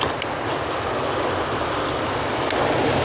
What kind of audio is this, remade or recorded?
recorded